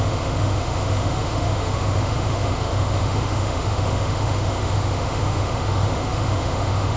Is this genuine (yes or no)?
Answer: no